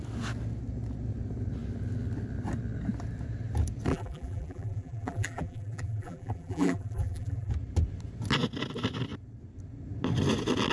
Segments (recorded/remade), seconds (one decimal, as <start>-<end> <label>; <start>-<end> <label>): 0.0-3.9 recorded; 3.9-7.5 remade; 7.5-10.7 recorded

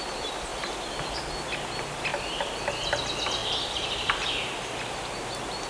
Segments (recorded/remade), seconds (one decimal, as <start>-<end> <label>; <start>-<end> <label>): 0.0-0.5 recorded; 0.5-1.2 remade; 1.2-2.1 recorded; 2.1-3.0 remade; 3.0-3.4 recorded; 3.4-4.5 remade; 4.5-5.7 recorded

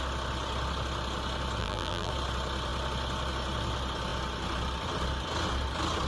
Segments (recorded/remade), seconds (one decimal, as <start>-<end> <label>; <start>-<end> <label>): 0.0-1.6 recorded; 1.6-2.1 remade; 2.1-6.1 recorded

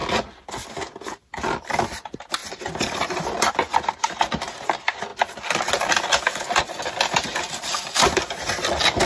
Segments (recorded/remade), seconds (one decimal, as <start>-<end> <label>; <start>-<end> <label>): 0.0-9.1 recorded

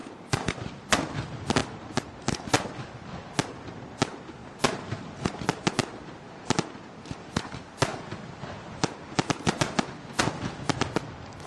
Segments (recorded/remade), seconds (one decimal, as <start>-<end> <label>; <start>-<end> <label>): 0.0-0.9 remade; 0.9-4.4 recorded; 4.4-5.3 remade; 5.3-11.5 recorded

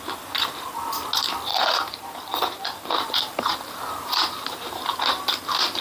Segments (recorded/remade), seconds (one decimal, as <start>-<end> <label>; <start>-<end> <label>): 0.0-1.5 recorded; 1.5-5.0 remade; 5.0-5.8 recorded

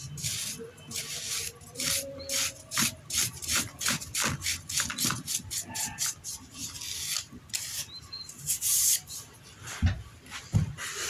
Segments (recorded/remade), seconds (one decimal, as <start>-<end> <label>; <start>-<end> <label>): 0.0-11.1 recorded

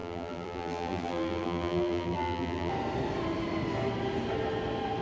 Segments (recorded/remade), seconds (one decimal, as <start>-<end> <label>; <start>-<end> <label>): 0.0-2.7 remade; 2.7-5.0 recorded